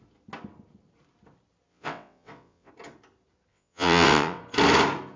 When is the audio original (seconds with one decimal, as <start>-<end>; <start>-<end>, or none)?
0.0-1.7; 2.7-3.5; 4.4-5.2

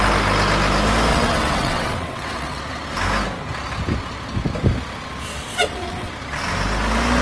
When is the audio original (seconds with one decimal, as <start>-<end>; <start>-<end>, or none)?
0.0-1.1; 2.6-5.5; 6.1-7.2

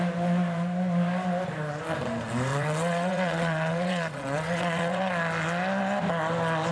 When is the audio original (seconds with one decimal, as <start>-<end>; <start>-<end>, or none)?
0.0-2.5; 5.1-6.7